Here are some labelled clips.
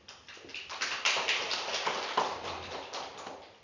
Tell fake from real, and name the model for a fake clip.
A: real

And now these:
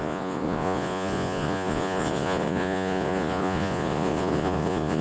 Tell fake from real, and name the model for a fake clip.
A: fake, vocoder, Vocos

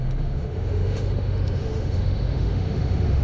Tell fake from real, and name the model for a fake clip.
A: fake, autoencoder, DAC-VAE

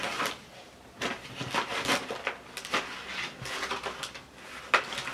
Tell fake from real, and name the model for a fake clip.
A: real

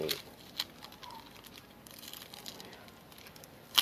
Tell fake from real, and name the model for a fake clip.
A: real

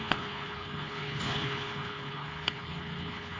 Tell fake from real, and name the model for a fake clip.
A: fake, codec, HILCodec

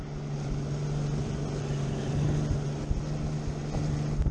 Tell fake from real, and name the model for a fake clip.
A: real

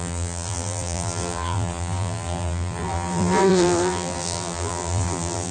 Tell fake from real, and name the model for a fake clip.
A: fake, vocoder, BigVGAN v2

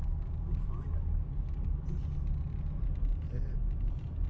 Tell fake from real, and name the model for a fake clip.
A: real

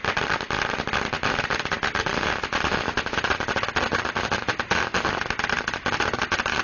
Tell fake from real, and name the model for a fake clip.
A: real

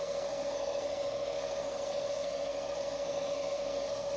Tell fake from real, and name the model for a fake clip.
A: fake, codec, SNAC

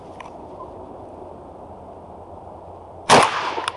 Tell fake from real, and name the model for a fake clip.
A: real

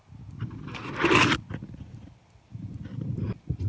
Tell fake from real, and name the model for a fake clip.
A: real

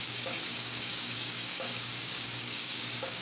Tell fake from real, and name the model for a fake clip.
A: fake, codec, DAC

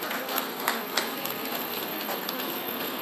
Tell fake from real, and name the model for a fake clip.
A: fake, codec, SNAC